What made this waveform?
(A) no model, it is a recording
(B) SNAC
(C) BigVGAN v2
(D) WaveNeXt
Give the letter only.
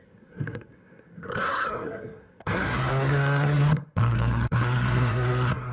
B